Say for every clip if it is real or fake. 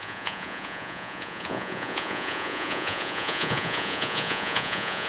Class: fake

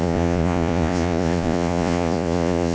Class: fake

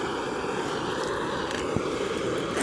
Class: real